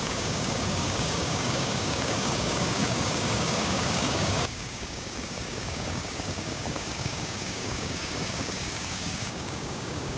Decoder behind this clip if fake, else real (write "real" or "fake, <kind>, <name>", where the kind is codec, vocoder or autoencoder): fake, codec, DAC